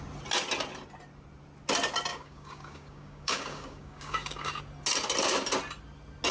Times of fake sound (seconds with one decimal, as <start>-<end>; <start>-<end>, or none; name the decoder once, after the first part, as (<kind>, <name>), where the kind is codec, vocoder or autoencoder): 2.1-4.6 (codec, DAC)